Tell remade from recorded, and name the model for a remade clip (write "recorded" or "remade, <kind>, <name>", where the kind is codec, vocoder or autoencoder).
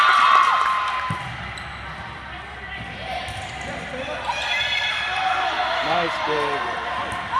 recorded